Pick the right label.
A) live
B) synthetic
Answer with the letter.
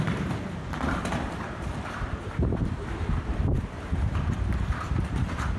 B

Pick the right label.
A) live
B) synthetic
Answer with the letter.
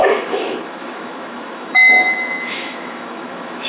B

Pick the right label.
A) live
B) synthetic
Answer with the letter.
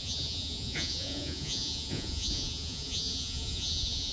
B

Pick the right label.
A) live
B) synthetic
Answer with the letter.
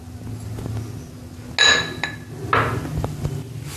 A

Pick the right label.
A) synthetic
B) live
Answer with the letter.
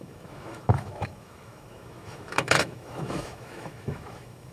A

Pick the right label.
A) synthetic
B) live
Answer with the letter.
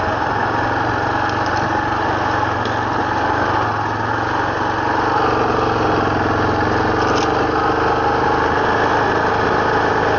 B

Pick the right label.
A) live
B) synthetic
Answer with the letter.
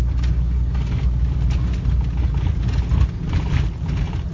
A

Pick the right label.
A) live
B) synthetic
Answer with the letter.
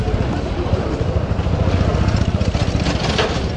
A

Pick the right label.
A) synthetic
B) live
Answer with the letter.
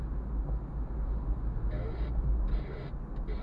B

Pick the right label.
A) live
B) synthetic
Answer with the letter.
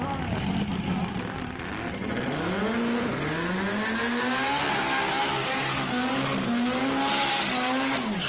A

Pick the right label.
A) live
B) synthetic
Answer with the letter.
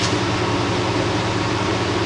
B